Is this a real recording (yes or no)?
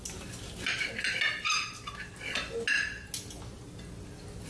yes